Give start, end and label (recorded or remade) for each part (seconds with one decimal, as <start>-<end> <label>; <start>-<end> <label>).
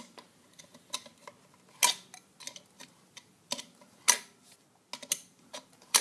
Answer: 0.0-1.1 remade; 1.1-2.9 recorded; 2.9-4.0 remade; 4.0-5.3 recorded; 5.3-6.0 remade